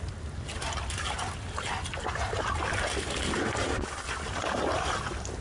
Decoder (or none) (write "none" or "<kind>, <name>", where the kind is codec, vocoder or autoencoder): none